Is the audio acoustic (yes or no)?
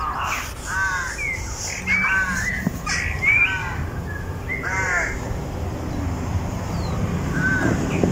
yes